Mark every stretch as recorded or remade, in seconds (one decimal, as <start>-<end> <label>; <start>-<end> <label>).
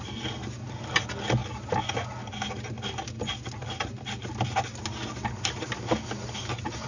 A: 0.0-6.9 recorded